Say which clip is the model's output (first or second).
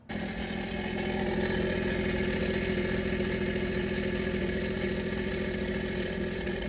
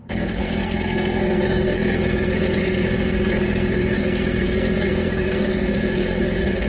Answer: second